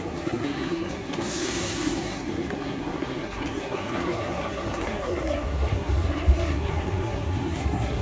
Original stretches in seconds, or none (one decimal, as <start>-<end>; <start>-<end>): none